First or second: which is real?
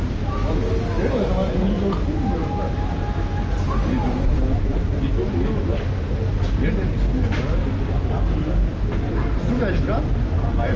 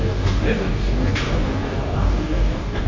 first